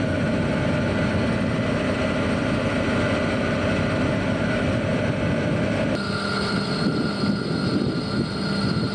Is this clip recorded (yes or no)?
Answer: yes